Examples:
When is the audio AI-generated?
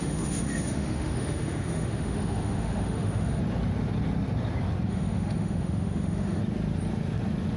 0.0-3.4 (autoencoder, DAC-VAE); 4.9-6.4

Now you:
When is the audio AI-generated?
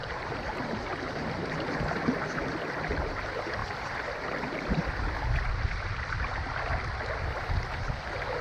0.0-1.3 (vocoder, BigVGAN v2)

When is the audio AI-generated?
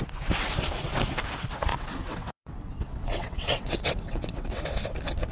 1.7-4.6 (vocoder, WaveNeXt)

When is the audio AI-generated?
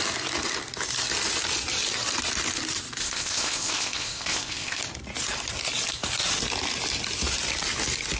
3.0-4.8 (codec, ZipCodec)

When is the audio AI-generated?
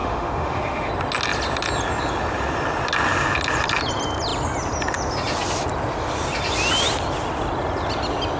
0.0-0.9 (autoencoder, DAC-VAE)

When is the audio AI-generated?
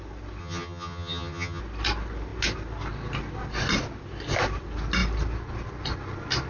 0.4-1.6 (vocoder, HiFi-GAN)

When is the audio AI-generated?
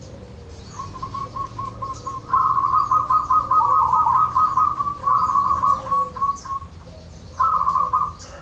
1.2-2.3 (vocoder, BigVGAN v2); 5.0-6.3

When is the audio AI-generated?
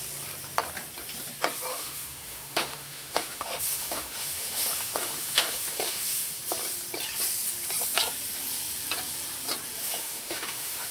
1.7-6.4 (autoencoder, DAC-VAE); 9.8-10.9